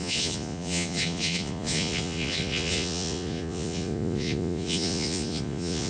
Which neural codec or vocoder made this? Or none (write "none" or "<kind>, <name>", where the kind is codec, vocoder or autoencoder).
vocoder, Vocos